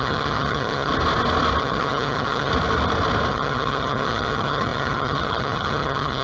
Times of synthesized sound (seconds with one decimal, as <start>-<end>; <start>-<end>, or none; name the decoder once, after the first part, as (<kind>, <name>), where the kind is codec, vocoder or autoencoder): 0.0-0.9 (vocoder, HiFi-GAN); 1.6-2.5; 3.3-6.2